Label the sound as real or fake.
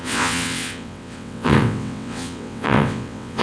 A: fake